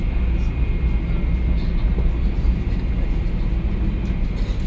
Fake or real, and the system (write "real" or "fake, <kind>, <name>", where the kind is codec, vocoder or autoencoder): real